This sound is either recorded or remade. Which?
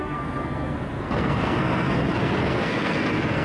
remade